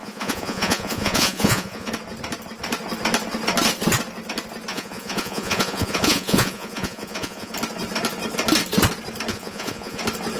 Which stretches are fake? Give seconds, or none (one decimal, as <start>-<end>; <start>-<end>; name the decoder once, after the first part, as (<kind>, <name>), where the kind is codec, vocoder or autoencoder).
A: 0.0-1.9 (vocoder, Vocos); 4.7-7.5; 9.3-10.0